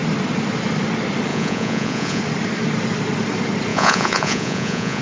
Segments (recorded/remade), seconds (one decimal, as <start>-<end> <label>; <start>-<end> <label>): 0.0-1.3 recorded; 1.3-2.2 remade; 2.2-3.7 recorded; 3.7-5.0 remade